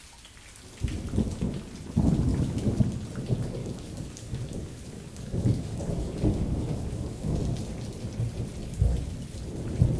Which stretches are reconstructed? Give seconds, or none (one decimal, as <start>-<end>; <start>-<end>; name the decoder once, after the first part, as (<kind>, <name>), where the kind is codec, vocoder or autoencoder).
2.3-2.8 (codec, DAC); 3.6-7.4